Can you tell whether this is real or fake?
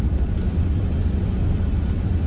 real